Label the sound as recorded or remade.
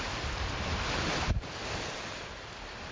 remade